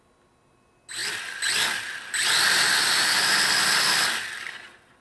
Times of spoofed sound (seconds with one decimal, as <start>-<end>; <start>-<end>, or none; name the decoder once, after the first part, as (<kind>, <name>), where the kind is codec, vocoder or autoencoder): none